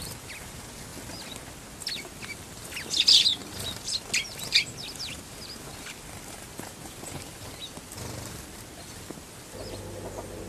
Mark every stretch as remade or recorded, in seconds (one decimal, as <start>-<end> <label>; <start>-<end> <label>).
0.0-3.4 recorded; 3.4-5.6 remade; 5.6-10.5 recorded